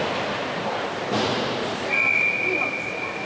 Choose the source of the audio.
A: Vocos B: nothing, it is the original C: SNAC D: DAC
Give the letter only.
B